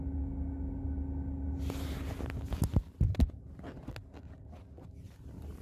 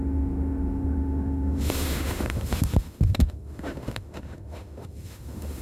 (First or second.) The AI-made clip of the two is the second